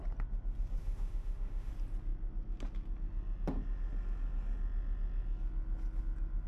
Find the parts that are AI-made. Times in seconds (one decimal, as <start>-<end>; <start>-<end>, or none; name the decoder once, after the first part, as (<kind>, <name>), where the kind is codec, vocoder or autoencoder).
0.8-1.7 (autoencoder, DAC-VAE)

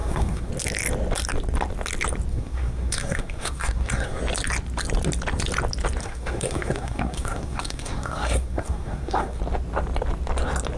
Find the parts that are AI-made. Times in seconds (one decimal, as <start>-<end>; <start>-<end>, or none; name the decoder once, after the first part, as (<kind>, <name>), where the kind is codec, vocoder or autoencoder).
0.0-0.5 (codec, SNAC); 2.3-4.2; 6.0-9.4